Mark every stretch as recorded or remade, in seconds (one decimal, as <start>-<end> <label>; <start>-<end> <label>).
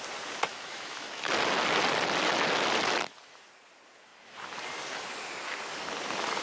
0.0-0.5 recorded; 0.5-1.3 remade; 1.3-6.4 recorded